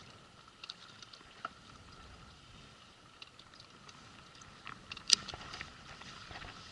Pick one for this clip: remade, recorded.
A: remade